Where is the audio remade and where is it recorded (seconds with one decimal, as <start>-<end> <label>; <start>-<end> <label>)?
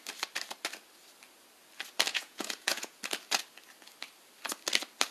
0.0-2.1 recorded; 2.1-3.0 remade; 3.0-5.1 recorded